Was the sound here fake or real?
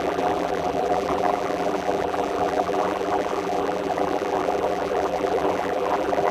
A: fake